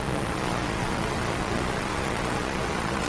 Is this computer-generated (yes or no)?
yes